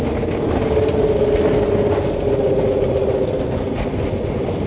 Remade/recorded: recorded